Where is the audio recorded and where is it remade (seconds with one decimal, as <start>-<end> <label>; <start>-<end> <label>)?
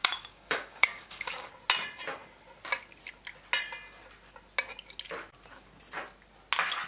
0.0-1.5 remade; 1.5-6.9 recorded